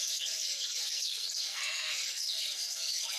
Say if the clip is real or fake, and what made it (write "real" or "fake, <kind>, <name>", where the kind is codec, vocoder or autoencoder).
fake, codec, SNAC